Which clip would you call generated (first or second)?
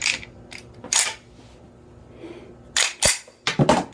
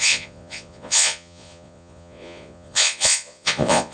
second